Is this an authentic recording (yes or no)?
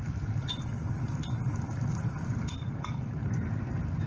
yes